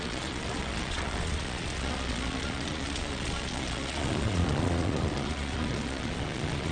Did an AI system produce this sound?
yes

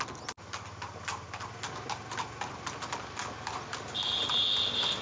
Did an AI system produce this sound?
no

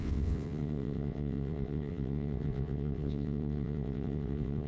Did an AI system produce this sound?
yes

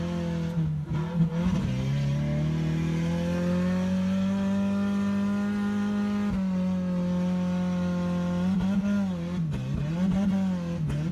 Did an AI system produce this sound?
no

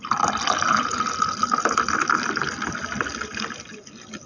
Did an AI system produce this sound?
no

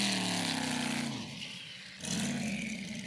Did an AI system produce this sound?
no